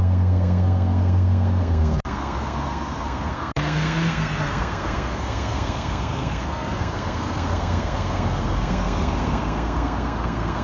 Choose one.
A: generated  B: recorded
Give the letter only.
A